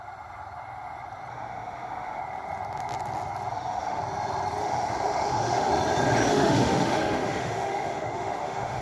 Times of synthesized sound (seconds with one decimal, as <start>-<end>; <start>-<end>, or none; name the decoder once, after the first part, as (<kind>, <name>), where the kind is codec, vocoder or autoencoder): 1.3-2.2 (autoencoder, DAC-VAE); 3.5-4.0; 4.6-5.7; 6.3-8.8